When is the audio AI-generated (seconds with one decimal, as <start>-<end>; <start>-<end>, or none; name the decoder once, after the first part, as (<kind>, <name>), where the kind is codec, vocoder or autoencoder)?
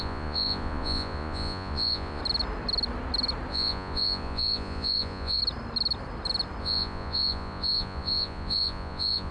0.0-2.2 (vocoder, Vocos); 3.5-5.4; 6.6-9.3